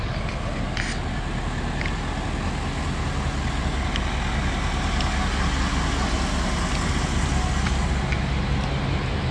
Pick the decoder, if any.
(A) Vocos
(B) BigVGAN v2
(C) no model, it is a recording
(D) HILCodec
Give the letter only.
C